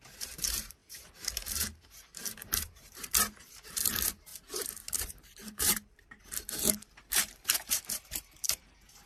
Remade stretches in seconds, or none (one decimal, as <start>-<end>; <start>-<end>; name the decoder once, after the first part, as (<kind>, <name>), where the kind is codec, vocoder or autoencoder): 0.0-9.1 (vocoder, BigVGAN v2)